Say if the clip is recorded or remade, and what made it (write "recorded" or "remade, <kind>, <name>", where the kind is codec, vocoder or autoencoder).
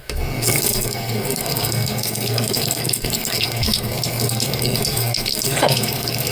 remade, codec, SNAC